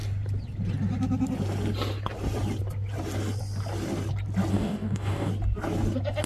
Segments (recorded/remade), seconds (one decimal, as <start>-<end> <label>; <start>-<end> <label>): 0.0-4.5 recorded; 4.5-5.3 remade; 5.3-6.3 recorded

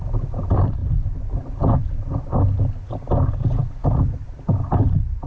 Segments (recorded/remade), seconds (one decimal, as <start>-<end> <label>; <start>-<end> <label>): 0.0-5.3 recorded